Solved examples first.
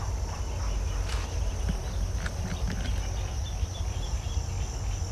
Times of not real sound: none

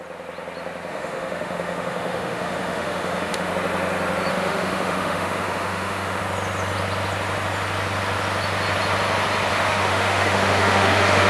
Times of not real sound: 0.9-3.5 (autoencoder, DAC-VAE); 4.3-6.2; 9.5-11.3

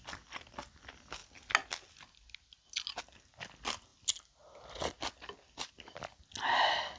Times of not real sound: none

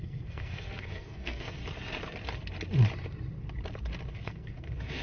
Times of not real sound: 0.0-1.6 (codec, SNAC); 4.1-5.0